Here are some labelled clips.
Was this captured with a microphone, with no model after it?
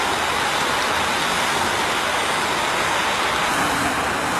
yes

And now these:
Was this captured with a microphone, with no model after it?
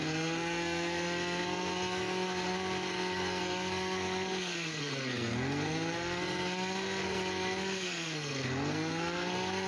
no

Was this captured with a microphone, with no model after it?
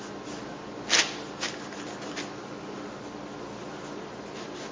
yes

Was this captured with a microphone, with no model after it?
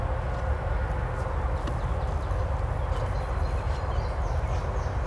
yes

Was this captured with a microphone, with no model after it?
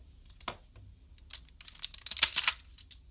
yes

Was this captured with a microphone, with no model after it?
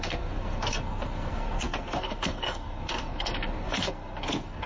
no